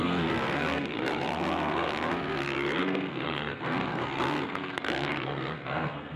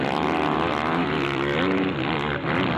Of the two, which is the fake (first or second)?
first